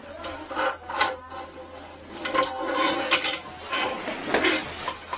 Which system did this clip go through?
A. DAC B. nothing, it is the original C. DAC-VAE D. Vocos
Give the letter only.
B